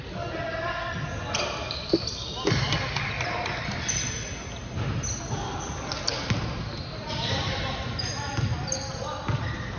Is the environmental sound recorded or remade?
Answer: recorded